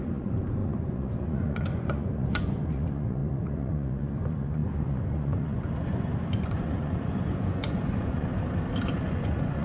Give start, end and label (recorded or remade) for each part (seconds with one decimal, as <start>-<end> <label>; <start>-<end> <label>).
0.0-8.3 remade; 8.3-9.1 recorded; 9.1-9.6 remade